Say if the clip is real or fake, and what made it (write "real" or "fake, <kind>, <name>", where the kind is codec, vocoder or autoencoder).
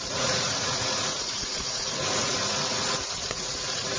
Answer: fake, vocoder, Vocos